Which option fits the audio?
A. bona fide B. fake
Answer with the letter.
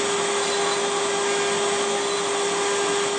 A